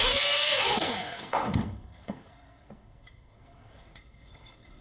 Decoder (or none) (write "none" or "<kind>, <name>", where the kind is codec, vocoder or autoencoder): codec, SNAC